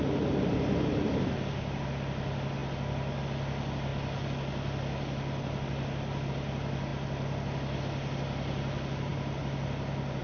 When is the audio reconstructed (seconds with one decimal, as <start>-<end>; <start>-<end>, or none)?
none